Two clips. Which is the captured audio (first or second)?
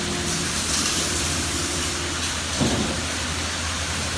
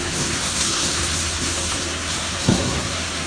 first